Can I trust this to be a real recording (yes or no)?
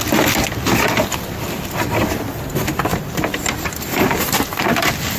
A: yes